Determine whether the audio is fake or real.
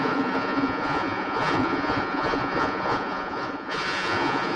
fake